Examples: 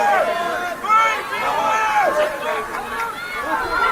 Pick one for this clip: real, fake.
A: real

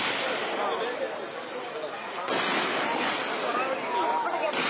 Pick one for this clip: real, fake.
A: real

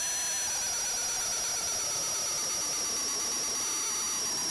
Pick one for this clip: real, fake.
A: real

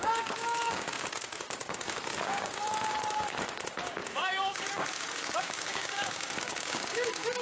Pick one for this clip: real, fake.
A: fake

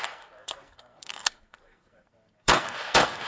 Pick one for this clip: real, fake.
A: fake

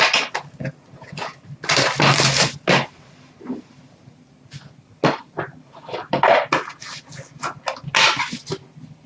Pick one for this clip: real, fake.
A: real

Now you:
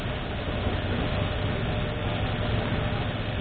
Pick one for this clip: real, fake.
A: real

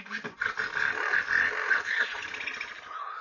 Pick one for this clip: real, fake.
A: real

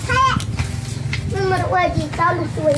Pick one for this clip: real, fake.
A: real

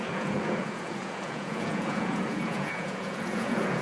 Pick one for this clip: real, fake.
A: fake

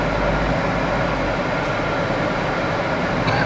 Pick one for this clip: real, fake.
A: real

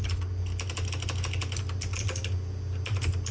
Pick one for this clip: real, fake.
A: real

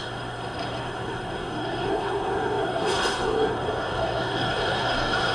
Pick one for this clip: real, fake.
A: fake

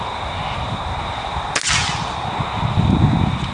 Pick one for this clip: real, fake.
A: real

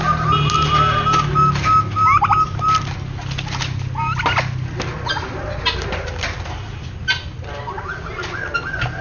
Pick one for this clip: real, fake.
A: real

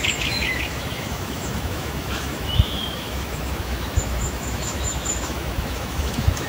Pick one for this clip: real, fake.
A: fake